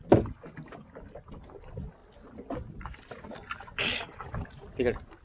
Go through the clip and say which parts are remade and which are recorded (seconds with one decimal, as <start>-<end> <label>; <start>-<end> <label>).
0.0-5.2 recorded